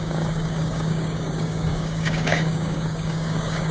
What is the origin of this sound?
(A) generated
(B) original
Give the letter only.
A